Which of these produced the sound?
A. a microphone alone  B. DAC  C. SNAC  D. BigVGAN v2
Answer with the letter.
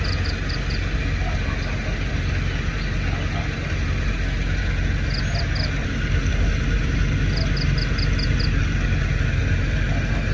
A